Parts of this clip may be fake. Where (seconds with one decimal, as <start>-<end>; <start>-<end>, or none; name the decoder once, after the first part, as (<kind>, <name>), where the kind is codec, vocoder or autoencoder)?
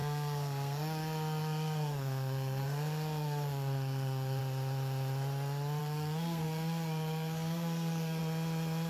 0.0-4.4 (codec, SNAC); 5.8-8.2